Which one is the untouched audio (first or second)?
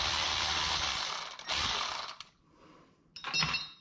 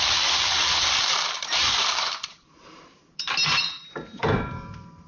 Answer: first